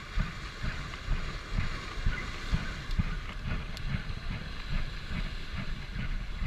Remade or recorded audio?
recorded